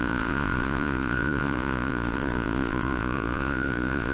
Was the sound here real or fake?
fake